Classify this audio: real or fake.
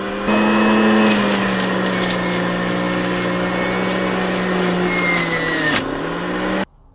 real